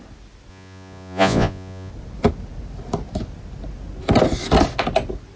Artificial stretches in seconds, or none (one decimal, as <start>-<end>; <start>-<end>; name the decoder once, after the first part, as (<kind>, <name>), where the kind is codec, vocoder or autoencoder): 0.5-1.9 (vocoder, Vocos)